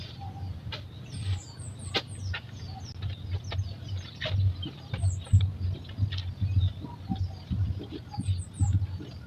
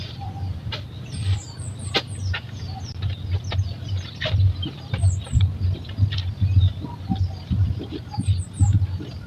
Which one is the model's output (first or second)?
second